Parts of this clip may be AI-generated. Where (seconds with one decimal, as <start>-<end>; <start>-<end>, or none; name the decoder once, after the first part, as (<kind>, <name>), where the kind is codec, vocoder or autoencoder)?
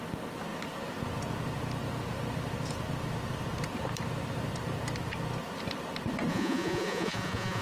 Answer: 6.3-7.6 (vocoder, Vocos)